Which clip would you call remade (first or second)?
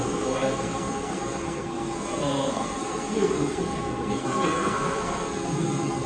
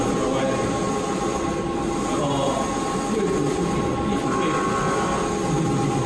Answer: first